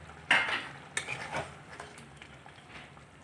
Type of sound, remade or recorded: recorded